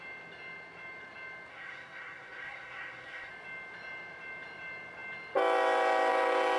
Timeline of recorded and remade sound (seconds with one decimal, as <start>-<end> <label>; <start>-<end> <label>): 0.0-1.5 recorded; 1.5-3.3 remade; 3.3-6.6 recorded